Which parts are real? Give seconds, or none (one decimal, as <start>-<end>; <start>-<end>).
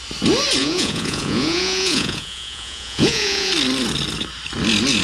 0.0-0.6; 3.5-5.0